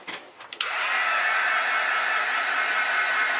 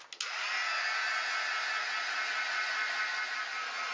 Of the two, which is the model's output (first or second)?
first